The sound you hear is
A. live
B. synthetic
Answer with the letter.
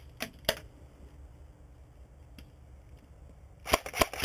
A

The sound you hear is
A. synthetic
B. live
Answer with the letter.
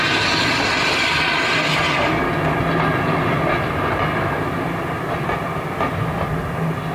B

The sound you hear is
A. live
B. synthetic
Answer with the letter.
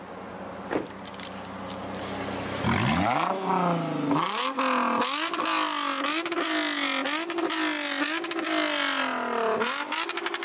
A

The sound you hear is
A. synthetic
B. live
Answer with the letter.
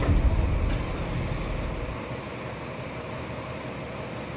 B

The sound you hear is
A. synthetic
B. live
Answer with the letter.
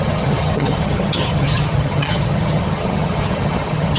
A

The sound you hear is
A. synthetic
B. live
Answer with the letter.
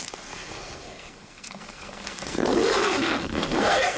A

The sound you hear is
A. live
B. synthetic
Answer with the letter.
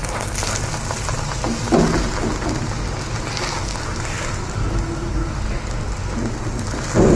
A